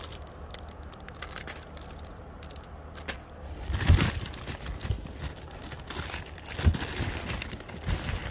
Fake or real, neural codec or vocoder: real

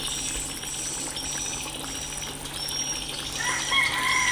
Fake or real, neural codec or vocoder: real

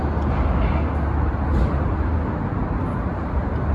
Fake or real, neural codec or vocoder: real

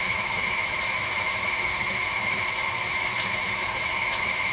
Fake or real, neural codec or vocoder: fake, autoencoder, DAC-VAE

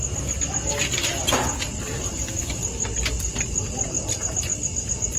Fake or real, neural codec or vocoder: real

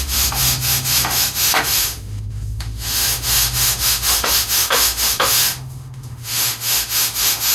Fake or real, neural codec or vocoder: fake, autoencoder, DAC-VAE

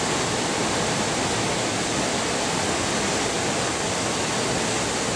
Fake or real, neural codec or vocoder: real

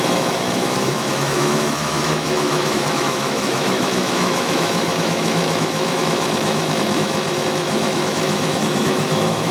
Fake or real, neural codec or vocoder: fake, autoencoder, DAC-VAE